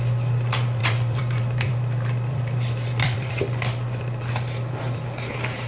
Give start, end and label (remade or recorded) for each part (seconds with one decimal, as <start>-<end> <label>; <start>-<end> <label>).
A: 0.0-0.8 recorded; 0.8-3.3 remade; 3.3-5.7 recorded